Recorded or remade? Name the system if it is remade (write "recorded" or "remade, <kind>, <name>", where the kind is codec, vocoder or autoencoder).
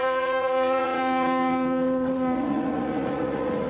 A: remade, vocoder, Vocos